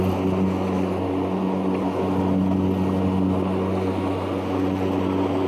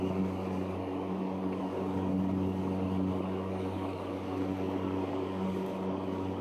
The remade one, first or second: second